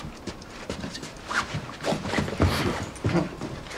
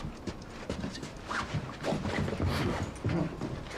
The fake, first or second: first